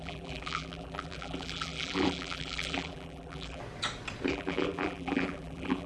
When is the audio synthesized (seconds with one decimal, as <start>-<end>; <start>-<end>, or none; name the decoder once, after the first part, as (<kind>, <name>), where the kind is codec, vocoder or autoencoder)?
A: 0.0-3.6 (vocoder, BigVGAN v2); 4.3-5.9